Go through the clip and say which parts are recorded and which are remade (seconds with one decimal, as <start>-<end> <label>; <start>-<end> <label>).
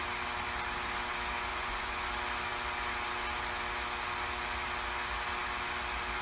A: 0.0-1.5 recorded; 1.5-2.1 remade; 2.1-6.2 recorded